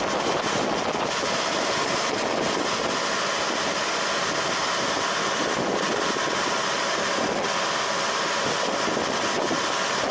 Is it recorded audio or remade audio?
recorded